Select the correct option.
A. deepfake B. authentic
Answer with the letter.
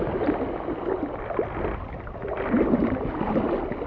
B